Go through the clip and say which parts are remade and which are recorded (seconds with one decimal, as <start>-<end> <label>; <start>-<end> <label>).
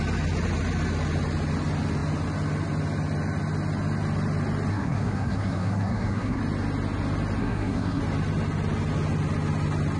0.0-4.7 recorded; 4.7-6.4 remade; 6.4-7.4 recorded; 7.4-8.0 remade; 8.0-10.0 recorded